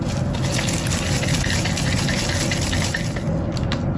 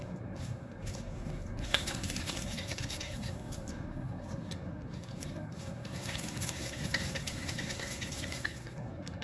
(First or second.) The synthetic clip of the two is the second